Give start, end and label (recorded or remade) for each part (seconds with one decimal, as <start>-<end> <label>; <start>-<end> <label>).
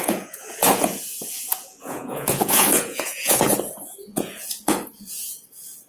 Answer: 0.0-5.9 remade